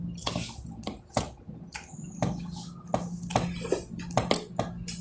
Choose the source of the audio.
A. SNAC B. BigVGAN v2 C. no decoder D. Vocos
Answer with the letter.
C